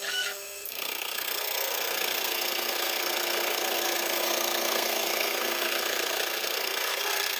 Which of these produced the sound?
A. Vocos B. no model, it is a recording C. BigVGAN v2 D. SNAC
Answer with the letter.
D